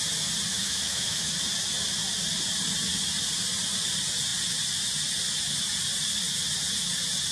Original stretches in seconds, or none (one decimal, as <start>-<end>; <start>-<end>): 0.0-0.5; 1.3-7.3